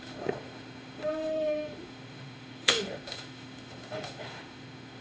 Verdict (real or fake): fake